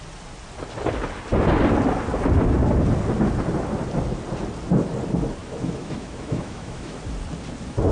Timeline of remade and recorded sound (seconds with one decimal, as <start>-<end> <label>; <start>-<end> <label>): 0.0-5.4 recorded; 5.4-7.0 remade; 7.0-7.9 recorded